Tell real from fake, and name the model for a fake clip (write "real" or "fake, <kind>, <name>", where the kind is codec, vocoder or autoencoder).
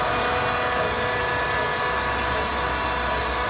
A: real